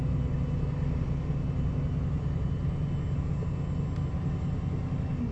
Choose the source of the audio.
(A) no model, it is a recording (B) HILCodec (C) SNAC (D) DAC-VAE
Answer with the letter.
A